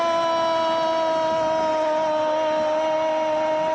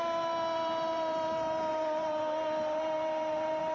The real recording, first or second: first